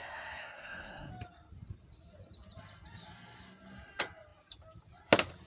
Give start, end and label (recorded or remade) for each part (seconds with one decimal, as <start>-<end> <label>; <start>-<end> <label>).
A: 0.0-1.1 remade; 1.1-5.5 recorded